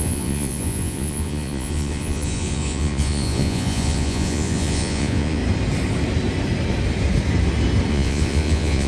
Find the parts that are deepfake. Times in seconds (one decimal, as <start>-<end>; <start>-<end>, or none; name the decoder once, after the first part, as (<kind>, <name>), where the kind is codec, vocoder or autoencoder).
0.0-5.4 (vocoder, Vocos); 7.9-8.9